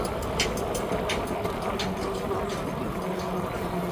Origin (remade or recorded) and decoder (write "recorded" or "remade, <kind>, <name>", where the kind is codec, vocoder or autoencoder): recorded